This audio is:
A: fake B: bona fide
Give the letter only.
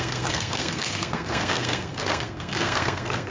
A